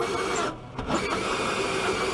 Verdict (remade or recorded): recorded